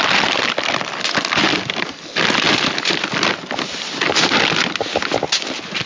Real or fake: real